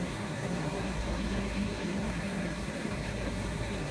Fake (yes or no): yes